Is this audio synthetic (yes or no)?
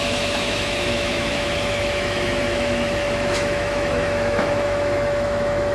yes